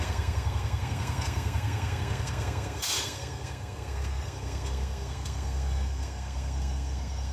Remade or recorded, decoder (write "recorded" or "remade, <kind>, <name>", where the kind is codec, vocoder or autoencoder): remade, codec, SNAC